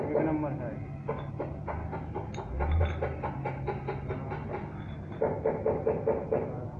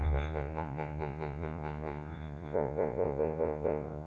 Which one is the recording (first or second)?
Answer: first